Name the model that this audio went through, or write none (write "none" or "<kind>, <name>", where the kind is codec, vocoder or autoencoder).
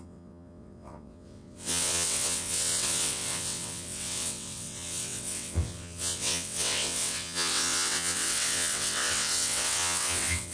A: vocoder, WaveNeXt